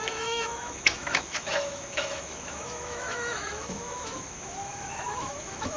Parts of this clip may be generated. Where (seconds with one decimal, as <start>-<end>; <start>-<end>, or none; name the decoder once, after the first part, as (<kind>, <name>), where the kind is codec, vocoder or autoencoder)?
0.0-5.8 (autoencoder, DAC-VAE)